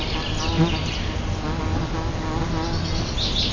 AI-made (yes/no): no